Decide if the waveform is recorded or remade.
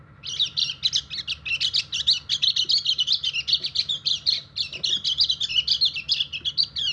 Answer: recorded